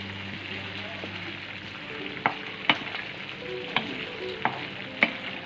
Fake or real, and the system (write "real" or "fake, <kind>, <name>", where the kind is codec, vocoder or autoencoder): real